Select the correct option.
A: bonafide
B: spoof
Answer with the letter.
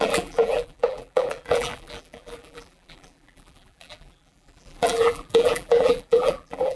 B